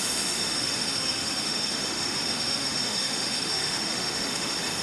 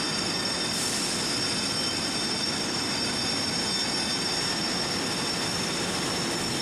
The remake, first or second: first